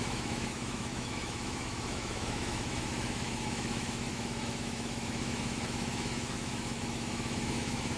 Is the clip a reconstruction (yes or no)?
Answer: yes